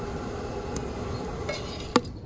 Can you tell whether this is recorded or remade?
recorded